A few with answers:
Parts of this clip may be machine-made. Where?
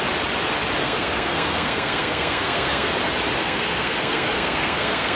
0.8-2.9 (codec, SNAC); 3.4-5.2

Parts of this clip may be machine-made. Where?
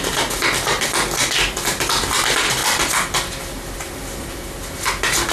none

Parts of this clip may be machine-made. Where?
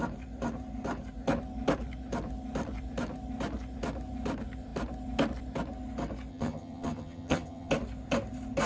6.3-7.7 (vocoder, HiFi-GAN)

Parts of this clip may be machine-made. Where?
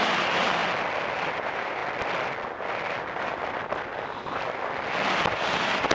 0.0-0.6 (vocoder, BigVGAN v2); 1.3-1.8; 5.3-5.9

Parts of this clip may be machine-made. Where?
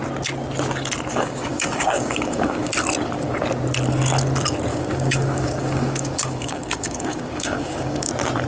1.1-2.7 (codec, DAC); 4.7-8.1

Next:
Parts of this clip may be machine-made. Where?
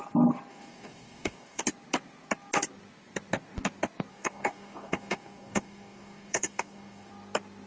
0.5-1.6 (codec, DAC); 4.1-7.1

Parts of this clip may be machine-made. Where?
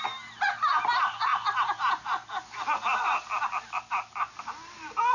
none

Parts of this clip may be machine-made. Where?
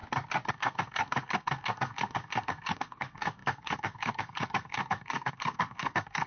0.5-6.3 (codec, SNAC)